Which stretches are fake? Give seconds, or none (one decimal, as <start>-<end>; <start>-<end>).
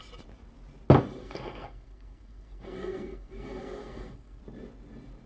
1.2-4.4